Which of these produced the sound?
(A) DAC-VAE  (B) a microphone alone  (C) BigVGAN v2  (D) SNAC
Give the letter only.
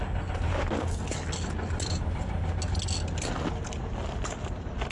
B